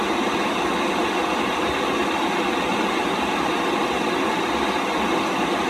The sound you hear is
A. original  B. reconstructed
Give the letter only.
A